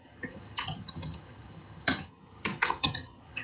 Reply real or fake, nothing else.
fake